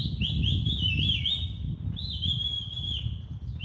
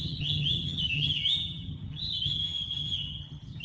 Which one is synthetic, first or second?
second